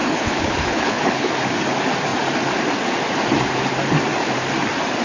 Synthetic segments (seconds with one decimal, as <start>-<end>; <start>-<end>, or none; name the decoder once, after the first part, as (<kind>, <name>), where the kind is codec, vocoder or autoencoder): 0.0-1.3 (codec, HILCodec)